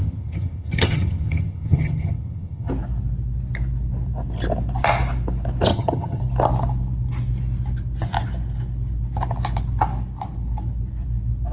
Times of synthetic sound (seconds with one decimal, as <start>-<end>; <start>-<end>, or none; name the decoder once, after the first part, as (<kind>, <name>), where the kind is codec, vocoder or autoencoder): 0.0-2.7 (vocoder, HiFi-GAN); 5.7-6.2